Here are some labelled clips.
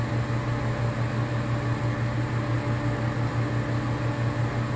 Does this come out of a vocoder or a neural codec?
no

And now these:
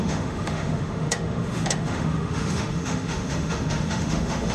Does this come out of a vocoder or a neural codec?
yes